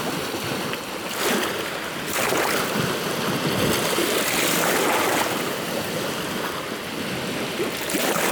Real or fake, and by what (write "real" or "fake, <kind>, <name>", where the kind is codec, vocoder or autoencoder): real